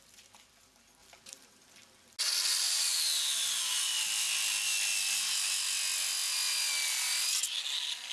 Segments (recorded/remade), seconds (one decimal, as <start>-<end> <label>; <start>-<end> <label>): 0.0-8.1 recorded